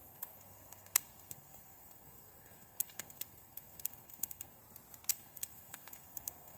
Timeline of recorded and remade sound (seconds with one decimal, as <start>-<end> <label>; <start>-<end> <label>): 0.0-4.6 remade; 4.6-5.1 recorded; 5.1-6.6 remade